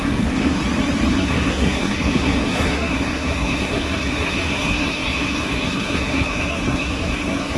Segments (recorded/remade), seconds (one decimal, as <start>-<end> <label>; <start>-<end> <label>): 0.0-0.6 remade; 0.6-1.1 recorded; 1.1-7.6 remade